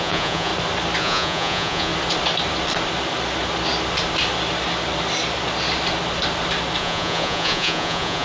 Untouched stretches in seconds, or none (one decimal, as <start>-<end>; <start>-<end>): 0.5-1.0; 1.9-6.8